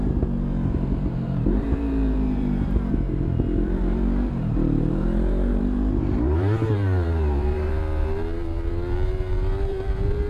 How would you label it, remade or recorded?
remade